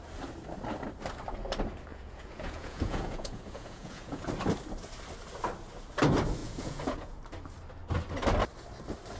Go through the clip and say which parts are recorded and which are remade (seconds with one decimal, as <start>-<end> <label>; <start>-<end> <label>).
0.0-1.9 recorded; 1.9-4.3 remade; 4.3-6.4 recorded; 6.4-7.2 remade; 7.2-9.2 recorded